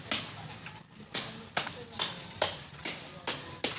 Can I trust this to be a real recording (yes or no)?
yes